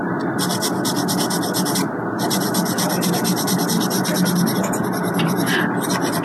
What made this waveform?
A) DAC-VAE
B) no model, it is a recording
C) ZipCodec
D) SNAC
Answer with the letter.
B